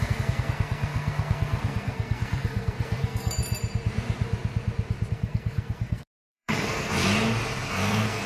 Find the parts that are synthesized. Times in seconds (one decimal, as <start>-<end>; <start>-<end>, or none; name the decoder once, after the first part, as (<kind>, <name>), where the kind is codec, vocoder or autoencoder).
0.0-3.4 (codec, SNAC); 5.1-7.0; 7.7-8.3